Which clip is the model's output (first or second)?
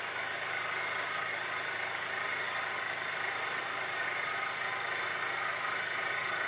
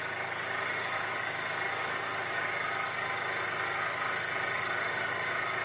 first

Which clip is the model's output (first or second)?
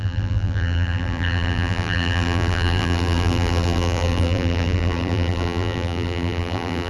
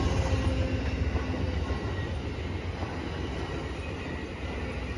first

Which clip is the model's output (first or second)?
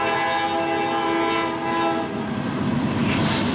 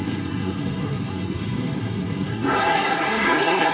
second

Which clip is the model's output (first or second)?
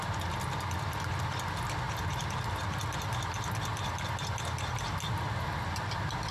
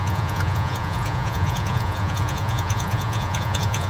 second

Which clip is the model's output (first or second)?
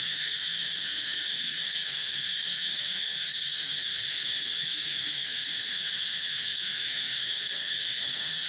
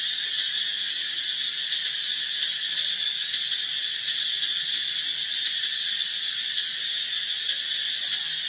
first